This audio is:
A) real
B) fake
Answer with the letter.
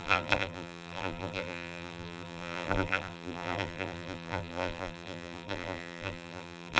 B